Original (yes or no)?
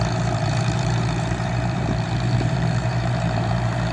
no